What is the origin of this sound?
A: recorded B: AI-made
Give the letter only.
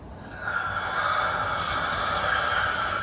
A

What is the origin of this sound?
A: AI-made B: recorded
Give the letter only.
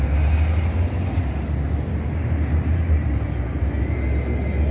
B